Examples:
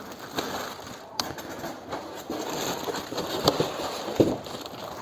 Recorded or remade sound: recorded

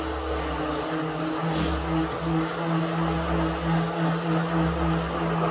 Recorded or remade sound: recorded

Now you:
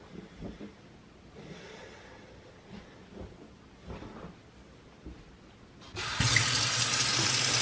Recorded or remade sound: recorded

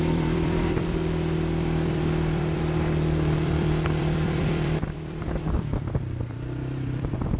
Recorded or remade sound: remade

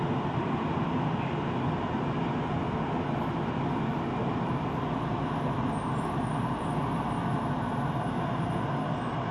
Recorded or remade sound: recorded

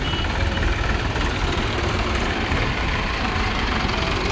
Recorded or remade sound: remade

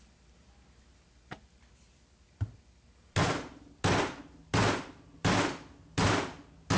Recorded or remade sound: recorded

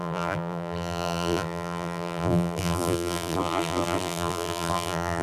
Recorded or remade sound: remade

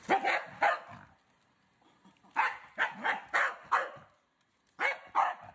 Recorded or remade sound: recorded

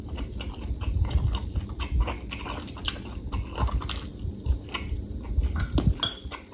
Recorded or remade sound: recorded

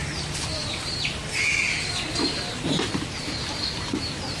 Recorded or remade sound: recorded